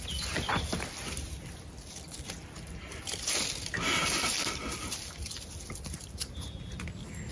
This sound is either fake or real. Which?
real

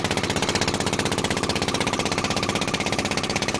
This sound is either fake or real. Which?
real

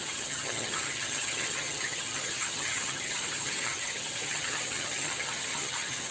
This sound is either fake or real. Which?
fake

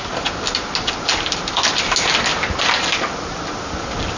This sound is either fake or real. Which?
real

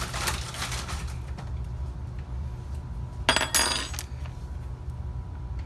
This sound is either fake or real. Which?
real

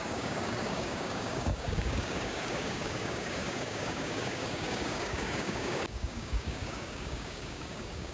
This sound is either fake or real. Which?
fake